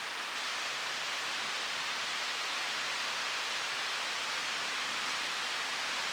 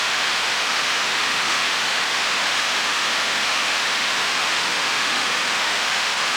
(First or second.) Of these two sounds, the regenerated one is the second